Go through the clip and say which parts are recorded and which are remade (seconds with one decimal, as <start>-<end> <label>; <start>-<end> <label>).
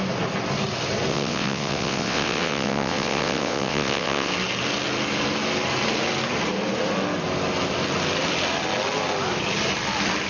0.0-1.1 recorded; 1.1-4.3 remade; 4.3-10.3 recorded